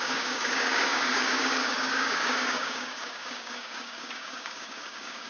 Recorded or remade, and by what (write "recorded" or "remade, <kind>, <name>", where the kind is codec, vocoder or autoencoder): remade, codec, DAC